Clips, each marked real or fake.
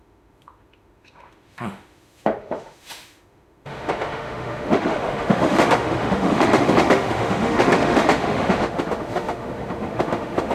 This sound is fake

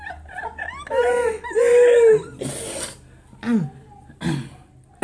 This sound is real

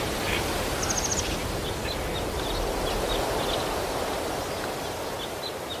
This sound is real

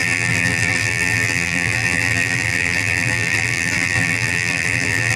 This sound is fake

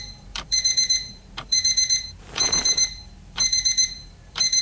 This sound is fake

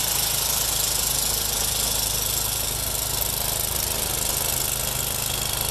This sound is real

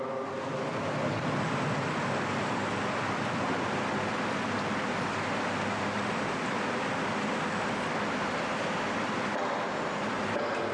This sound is real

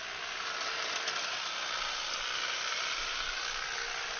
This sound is real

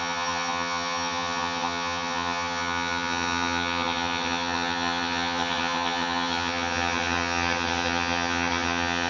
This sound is fake